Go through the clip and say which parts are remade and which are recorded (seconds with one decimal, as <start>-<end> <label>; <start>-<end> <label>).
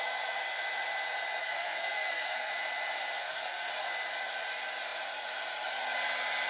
0.0-1.4 recorded; 1.4-2.5 remade; 2.5-3.2 recorded; 3.2-3.7 remade; 3.7-6.5 recorded